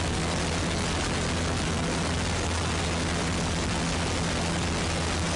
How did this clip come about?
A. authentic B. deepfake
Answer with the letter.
A